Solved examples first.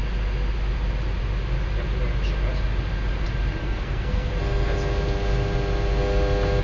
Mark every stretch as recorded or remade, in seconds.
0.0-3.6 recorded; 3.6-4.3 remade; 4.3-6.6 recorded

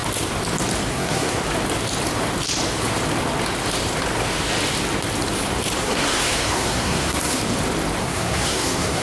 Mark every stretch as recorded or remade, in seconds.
0.0-0.9 recorded; 0.9-1.4 remade; 1.4-5.8 recorded; 5.8-7.4 remade; 7.4-8.0 recorded; 8.0-9.0 remade

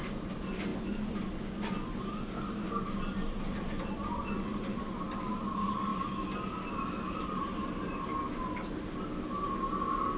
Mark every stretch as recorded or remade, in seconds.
0.0-10.2 recorded

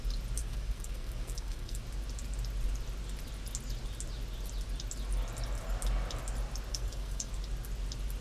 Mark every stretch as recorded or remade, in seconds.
0.0-0.4 recorded; 0.4-1.8 remade; 1.8-6.7 recorded; 6.7-7.3 remade; 7.3-8.2 recorded